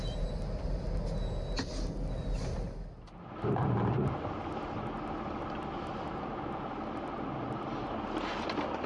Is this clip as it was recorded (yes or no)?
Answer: yes